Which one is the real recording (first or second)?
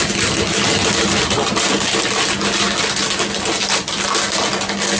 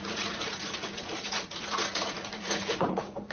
first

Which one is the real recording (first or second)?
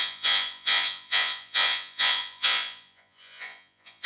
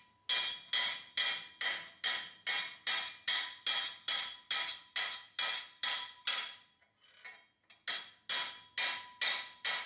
second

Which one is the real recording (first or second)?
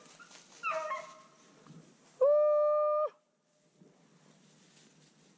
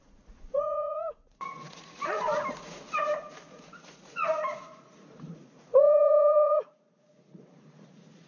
first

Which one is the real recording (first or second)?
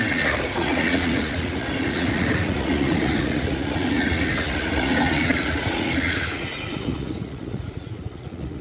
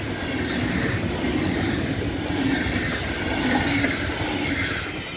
second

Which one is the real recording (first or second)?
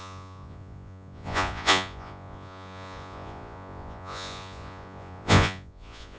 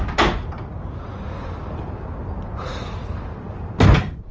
second